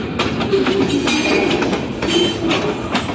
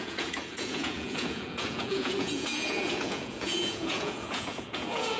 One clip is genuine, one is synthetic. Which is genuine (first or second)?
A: first